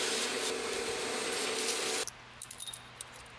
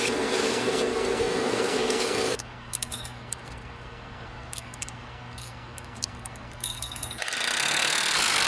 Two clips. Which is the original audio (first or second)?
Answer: first